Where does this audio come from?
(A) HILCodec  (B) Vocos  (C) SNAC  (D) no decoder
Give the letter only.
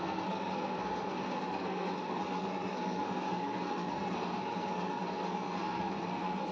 C